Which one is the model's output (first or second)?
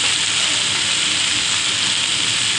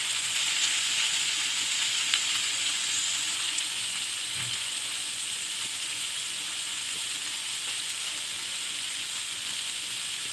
second